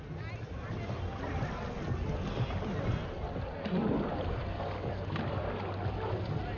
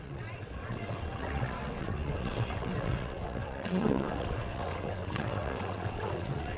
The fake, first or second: second